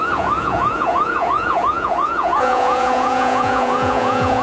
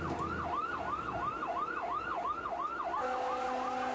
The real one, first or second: second